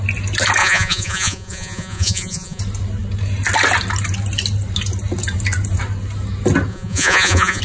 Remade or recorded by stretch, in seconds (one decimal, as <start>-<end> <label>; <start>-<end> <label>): 0.0-0.6 recorded; 0.6-2.6 remade; 2.6-6.7 recorded; 6.7-7.6 remade